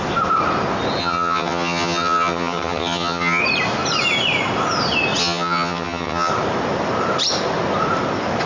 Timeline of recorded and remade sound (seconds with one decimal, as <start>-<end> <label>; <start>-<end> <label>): 0.0-1.0 recorded; 1.0-3.4 remade; 3.4-5.2 recorded; 5.2-6.3 remade; 6.3-8.5 recorded